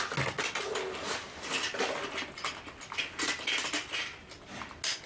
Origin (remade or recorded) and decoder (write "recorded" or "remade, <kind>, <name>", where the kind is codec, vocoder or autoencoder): recorded